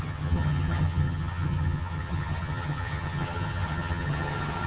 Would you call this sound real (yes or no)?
no